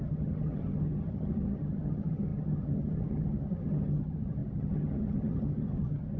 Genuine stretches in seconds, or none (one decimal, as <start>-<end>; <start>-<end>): none